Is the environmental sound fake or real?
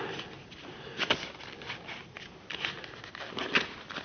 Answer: real